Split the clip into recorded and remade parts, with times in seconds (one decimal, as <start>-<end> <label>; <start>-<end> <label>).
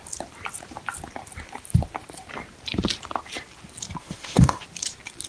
0.0-4.0 recorded; 4.0-4.6 remade; 4.6-5.3 recorded